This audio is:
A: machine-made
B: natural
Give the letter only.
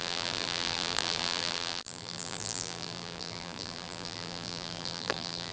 A